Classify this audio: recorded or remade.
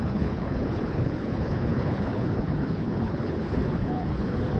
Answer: remade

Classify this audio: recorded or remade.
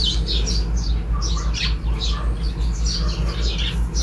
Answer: recorded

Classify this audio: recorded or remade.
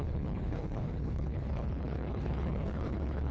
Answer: remade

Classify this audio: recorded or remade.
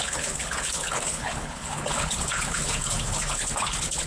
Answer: remade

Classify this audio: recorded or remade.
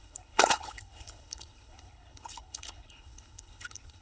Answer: remade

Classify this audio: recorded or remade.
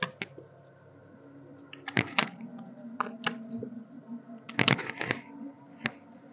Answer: recorded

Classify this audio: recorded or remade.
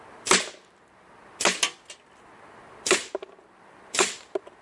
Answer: recorded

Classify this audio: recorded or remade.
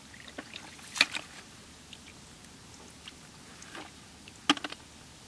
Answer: recorded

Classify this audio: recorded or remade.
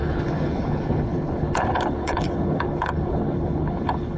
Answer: remade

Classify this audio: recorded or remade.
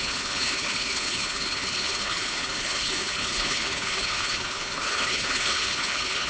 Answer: remade